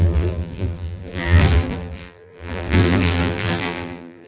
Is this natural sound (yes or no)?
no